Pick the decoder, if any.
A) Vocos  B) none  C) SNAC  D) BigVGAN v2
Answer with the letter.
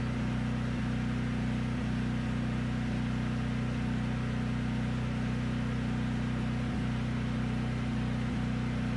B